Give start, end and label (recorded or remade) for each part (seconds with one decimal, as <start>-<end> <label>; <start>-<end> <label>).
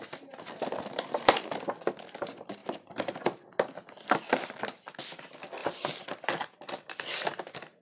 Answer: 0.0-5.6 recorded; 5.6-6.8 remade; 6.8-7.8 recorded